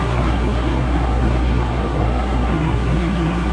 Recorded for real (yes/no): no